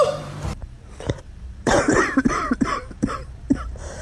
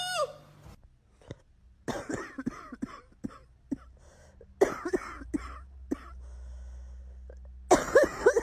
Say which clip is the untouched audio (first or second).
second